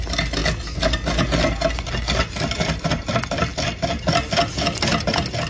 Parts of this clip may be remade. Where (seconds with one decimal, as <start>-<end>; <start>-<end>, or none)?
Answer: none